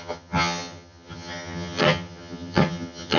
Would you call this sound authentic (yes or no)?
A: no